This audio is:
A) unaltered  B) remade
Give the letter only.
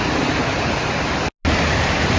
A